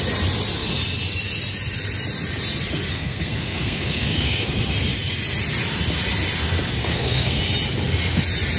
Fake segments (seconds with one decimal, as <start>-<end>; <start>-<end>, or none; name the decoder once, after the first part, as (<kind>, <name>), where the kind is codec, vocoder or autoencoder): 2.9-4.5 (codec, SNAC); 6.8-7.4